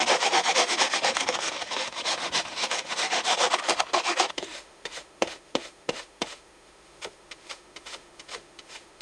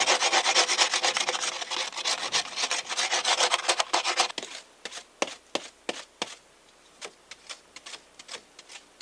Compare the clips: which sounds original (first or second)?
second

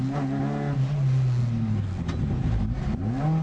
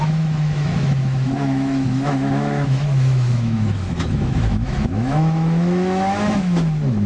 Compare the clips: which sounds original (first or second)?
first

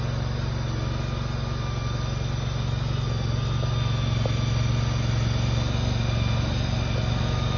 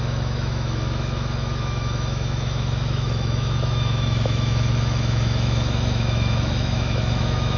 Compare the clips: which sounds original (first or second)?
first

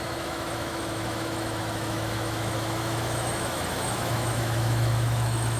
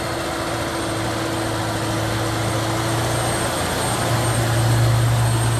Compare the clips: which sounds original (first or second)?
second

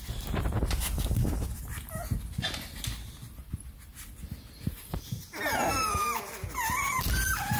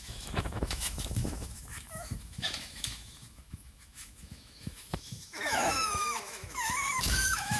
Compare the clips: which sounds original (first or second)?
first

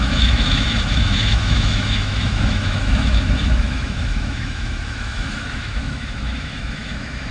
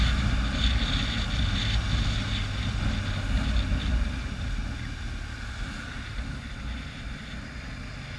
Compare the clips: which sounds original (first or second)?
second